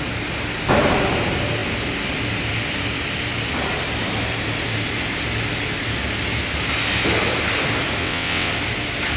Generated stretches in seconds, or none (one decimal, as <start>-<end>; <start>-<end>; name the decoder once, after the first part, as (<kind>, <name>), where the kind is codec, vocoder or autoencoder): 8.0-8.5 (vocoder, WaveNeXt)